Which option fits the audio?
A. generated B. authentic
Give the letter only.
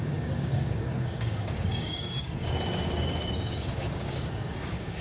A